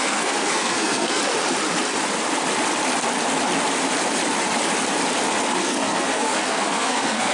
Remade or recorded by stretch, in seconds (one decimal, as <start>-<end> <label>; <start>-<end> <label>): 0.0-1.2 remade; 1.2-5.6 recorded; 5.6-7.3 remade